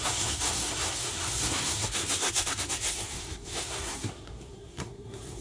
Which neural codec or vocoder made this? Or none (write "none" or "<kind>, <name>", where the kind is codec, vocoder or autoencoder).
codec, SNAC